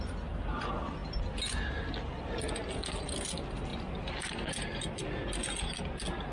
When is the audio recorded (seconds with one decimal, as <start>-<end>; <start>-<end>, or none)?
0.0-6.3